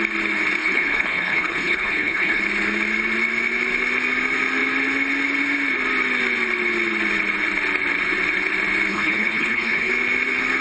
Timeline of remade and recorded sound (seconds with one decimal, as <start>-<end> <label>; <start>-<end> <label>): 0.0-0.6 recorded; 0.6-2.4 remade; 2.4-8.9 recorded; 8.9-9.9 remade; 9.9-10.6 recorded